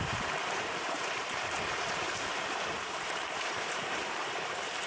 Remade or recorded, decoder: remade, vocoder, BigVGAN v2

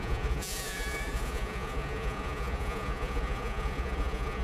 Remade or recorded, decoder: remade, vocoder, Vocos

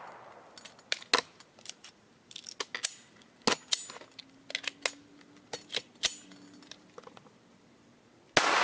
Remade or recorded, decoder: recorded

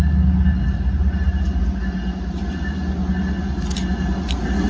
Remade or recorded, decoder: recorded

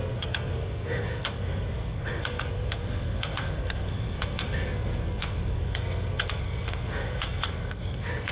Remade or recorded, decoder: remade, codec, SNAC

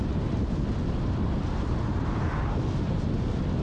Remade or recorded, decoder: recorded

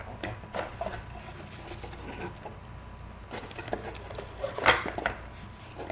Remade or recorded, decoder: recorded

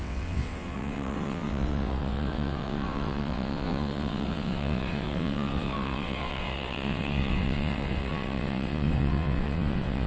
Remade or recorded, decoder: remade, vocoder, WaveNeXt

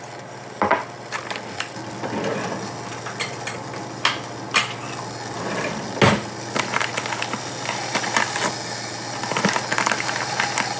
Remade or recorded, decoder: recorded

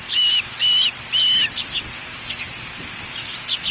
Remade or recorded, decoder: recorded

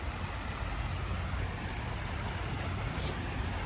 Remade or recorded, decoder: recorded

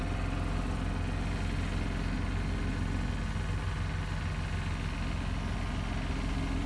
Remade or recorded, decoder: recorded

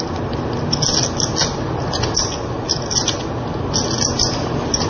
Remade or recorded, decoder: recorded